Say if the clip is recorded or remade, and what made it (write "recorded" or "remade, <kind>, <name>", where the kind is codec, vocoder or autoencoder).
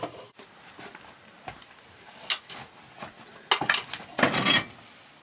recorded